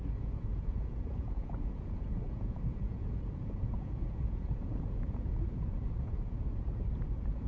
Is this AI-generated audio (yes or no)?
yes